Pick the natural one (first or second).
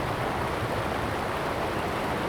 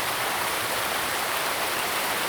first